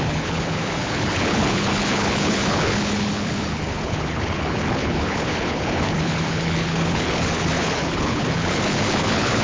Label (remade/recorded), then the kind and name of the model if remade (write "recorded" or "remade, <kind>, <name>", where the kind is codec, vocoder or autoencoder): remade, codec, HILCodec